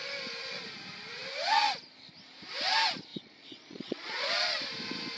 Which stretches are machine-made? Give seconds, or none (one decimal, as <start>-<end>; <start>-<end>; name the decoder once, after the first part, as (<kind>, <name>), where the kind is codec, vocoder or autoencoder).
3.1-4.3 (vocoder, Vocos)